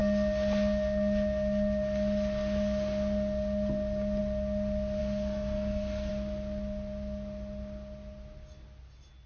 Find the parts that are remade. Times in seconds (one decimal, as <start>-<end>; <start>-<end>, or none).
5.0-6.1